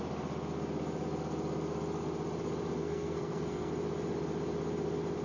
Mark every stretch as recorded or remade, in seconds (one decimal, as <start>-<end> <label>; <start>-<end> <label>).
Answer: 0.0-2.8 recorded; 2.8-3.7 remade; 3.7-5.2 recorded